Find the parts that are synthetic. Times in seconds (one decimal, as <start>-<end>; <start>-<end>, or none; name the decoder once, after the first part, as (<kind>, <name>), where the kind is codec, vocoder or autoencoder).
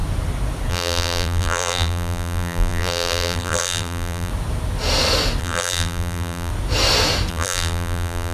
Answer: 0.7-4.3 (vocoder, BigVGAN v2); 5.4-6.5; 7.3-8.3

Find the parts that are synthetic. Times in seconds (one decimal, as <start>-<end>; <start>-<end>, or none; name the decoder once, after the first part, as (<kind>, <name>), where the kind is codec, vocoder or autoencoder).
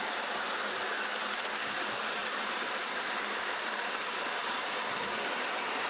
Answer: 2.2-5.1 (vocoder, BigVGAN v2)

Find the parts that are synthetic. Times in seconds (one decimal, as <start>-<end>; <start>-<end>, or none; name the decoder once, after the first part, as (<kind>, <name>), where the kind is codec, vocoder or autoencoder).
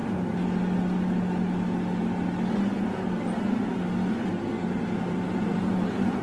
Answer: 4.6-6.2 (vocoder, BigVGAN v2)